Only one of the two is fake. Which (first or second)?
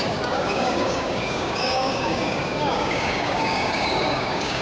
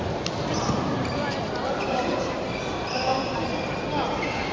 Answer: first